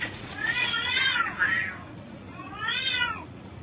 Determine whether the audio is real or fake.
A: fake